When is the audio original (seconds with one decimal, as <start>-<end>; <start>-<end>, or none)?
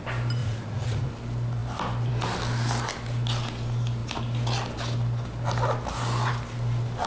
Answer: 0.0-0.4; 1.1-7.1